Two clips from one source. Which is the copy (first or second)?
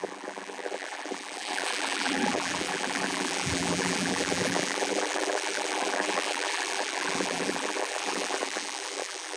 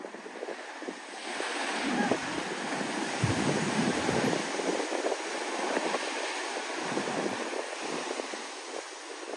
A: first